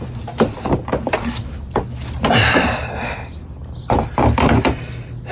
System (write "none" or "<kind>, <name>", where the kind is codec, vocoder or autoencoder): none